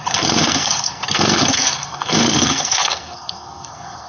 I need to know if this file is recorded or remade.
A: remade